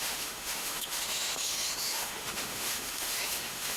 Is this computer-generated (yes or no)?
yes